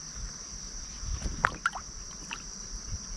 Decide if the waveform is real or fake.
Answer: real